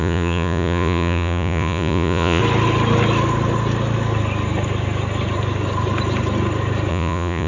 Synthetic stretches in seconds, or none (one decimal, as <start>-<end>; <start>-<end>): 0.0-2.4; 6.9-7.5